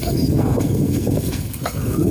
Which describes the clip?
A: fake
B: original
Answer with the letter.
A